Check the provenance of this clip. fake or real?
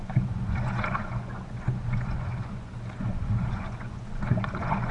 fake